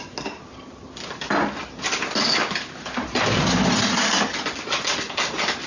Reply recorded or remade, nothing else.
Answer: recorded